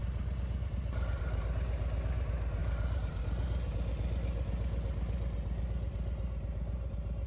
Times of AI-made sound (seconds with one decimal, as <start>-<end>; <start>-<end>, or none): 0.0-1.4; 2.6-3.2